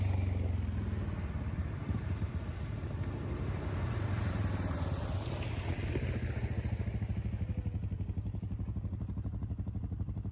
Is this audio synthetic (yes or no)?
no